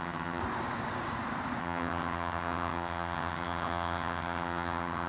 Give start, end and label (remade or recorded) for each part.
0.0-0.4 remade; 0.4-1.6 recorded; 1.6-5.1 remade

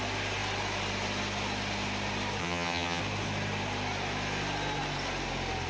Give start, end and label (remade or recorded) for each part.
0.0-2.4 recorded; 2.4-3.0 remade; 3.0-5.7 recorded

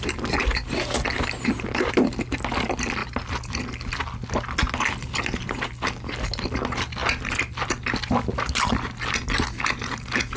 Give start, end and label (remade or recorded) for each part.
0.0-10.4 recorded

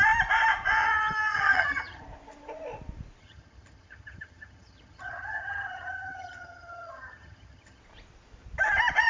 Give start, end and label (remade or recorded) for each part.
0.0-0.8 recorded; 0.8-2.0 remade; 2.0-3.2 recorded; 3.2-7.8 remade; 7.8-9.1 recorded

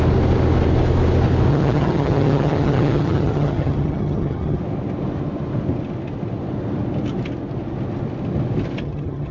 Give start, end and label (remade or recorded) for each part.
0.0-1.5 recorded; 1.5-4.6 remade; 4.6-8.8 recorded; 8.8-9.3 remade

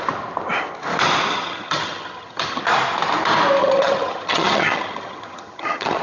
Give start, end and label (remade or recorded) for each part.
0.0-1.3 recorded; 1.3-2.6 remade; 2.6-3.6 recorded; 3.6-6.0 remade